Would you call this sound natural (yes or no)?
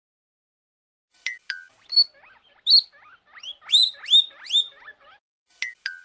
yes